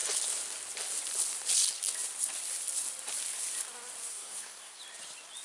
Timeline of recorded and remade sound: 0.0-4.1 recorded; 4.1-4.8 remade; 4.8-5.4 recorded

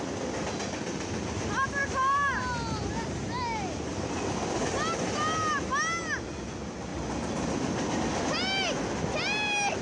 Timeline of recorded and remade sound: 0.0-9.8 recorded